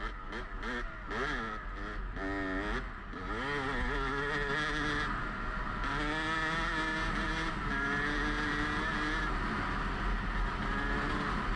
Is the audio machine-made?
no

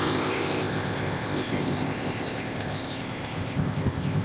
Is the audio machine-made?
yes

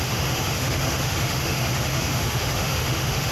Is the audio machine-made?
yes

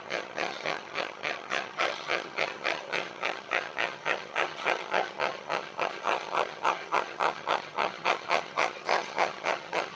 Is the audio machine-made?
yes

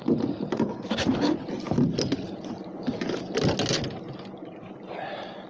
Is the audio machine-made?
no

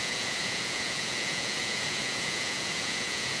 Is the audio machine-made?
yes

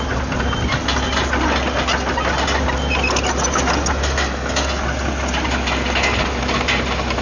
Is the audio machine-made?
no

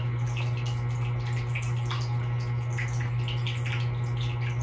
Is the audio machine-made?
no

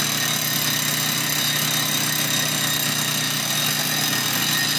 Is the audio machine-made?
no